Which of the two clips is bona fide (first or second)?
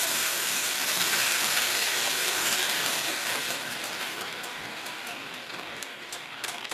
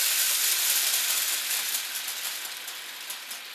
second